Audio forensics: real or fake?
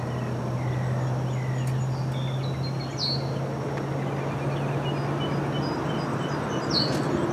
real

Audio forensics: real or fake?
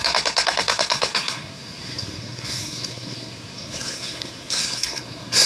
fake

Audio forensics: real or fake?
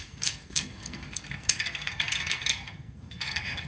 fake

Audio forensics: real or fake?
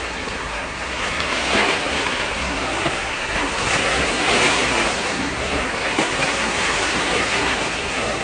fake